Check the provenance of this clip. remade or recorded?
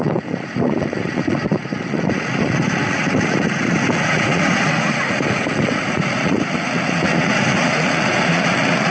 remade